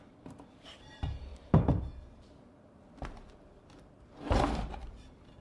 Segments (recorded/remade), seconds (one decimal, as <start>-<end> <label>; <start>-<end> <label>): 0.0-5.4 remade